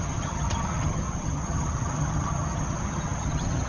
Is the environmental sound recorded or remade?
remade